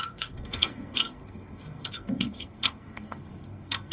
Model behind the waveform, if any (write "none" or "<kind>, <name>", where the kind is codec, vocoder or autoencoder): codec, SNAC